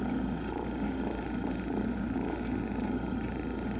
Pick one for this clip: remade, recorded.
recorded